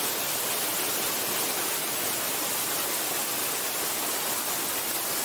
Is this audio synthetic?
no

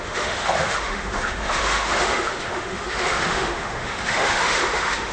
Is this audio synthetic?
yes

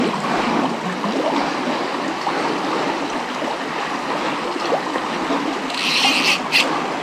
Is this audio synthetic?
no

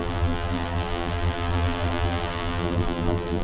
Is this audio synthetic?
yes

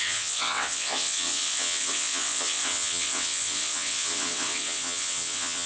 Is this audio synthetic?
yes